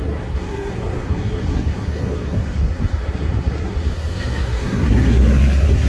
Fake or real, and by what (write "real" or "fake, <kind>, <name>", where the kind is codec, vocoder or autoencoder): fake, codec, SNAC